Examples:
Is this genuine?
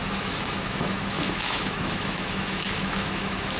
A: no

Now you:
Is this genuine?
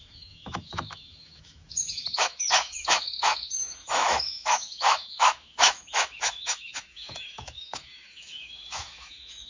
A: no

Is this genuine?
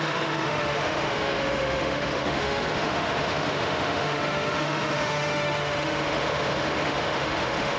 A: no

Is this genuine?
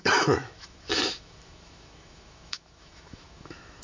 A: no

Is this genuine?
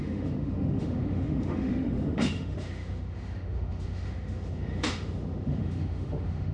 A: no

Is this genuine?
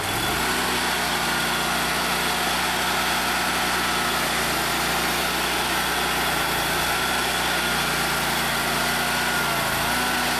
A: yes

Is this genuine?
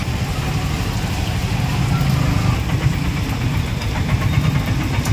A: yes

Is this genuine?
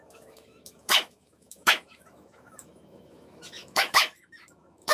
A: no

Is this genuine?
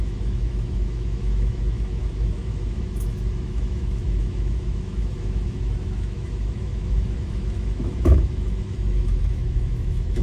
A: no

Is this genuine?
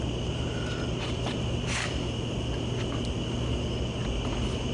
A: yes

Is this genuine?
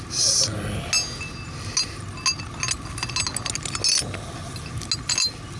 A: yes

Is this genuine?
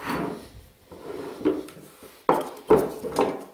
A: yes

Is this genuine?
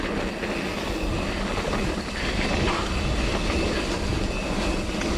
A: yes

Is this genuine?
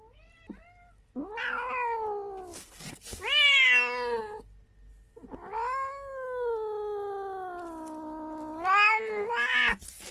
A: yes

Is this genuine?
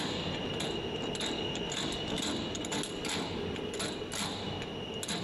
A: yes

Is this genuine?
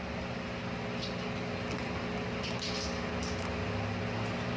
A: yes